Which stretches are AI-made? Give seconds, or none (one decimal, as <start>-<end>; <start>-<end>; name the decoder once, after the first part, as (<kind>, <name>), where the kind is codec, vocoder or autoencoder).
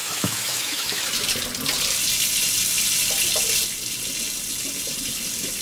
0.0-1.0 (autoencoder, DAC-VAE)